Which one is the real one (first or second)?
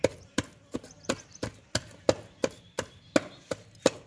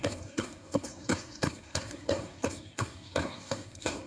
first